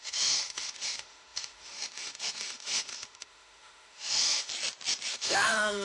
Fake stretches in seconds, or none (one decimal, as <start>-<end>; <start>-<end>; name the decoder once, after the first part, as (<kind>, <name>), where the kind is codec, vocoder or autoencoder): 0.0-4.5 (autoencoder, DAC-VAE); 5.1-5.8